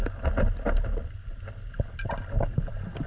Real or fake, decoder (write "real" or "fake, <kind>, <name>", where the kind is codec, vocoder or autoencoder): real